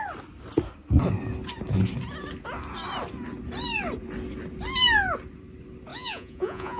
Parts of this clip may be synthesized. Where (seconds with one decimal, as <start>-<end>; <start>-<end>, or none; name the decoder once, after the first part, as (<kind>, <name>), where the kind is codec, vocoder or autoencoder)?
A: 5.9-6.8 (vocoder, Vocos)